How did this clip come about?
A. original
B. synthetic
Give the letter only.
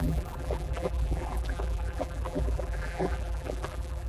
B